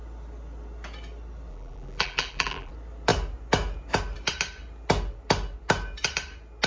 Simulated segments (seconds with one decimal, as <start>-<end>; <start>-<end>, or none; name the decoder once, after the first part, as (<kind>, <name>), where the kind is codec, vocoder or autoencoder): 1.5-2.7 (vocoder, BigVGAN v2)